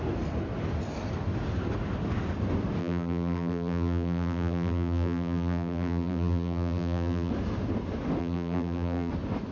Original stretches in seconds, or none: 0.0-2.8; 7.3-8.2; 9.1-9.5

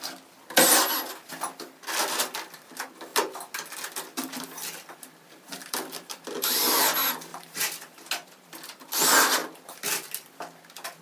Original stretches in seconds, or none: 0.0-7.3; 8.1-11.0

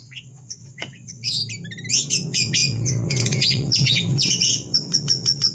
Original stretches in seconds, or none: 1.4-1.9

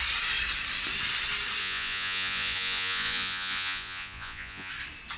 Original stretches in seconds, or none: 0.0-1.6; 4.7-5.2

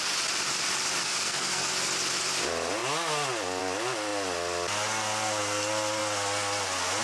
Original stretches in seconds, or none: 0.0-1.0; 1.7-7.0

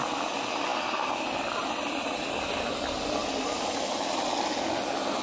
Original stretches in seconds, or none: 0.0-5.2

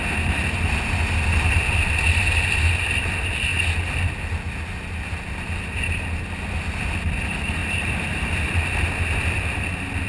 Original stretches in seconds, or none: 0.0-10.1

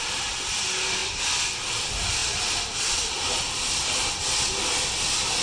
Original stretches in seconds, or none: 0.0-5.4